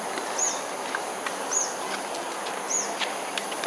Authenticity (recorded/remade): recorded